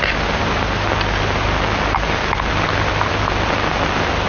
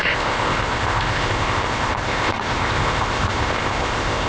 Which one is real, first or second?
first